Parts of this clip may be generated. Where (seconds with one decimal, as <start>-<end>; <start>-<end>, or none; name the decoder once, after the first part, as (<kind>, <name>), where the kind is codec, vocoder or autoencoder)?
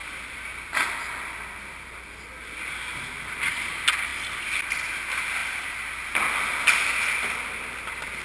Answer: 4.1-4.9 (vocoder, BigVGAN v2); 5.4-5.9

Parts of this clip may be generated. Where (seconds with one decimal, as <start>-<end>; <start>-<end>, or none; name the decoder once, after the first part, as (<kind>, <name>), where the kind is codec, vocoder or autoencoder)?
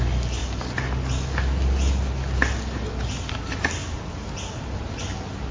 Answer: none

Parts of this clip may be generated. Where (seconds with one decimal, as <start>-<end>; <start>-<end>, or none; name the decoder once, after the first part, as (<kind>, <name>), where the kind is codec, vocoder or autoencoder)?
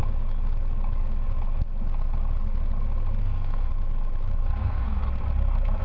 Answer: 3.2-3.7 (codec, SNAC); 4.4-5.0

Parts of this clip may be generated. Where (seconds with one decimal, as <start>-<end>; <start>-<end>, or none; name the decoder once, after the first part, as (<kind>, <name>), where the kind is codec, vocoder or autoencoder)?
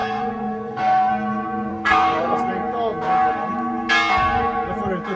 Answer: 0.0-1.1 (codec, SNAC); 1.7-2.5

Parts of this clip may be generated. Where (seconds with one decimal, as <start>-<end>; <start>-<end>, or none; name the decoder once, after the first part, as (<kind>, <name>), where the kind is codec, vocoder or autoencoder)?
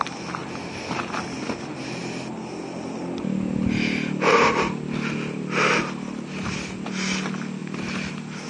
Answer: none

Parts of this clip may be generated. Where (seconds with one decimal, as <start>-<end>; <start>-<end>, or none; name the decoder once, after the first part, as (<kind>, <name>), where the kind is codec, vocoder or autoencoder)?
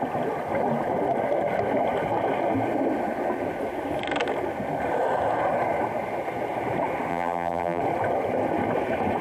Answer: 7.1-7.8 (vocoder, BigVGAN v2)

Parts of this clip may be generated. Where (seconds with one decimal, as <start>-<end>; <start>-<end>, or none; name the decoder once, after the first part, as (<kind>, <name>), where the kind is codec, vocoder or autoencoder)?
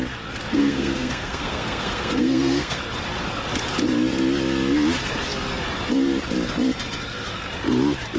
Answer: 0.5-2.8 (codec, SNAC)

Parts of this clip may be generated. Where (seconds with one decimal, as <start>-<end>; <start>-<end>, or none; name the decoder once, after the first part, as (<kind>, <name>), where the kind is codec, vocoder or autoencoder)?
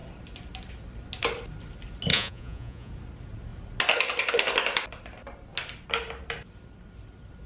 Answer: 2.1-2.9 (vocoder, Vocos)